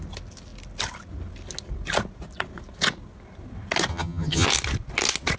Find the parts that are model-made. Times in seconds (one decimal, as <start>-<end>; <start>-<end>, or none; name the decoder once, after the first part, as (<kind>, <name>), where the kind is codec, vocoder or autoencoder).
3.9-4.5 (vocoder, HiFi-GAN)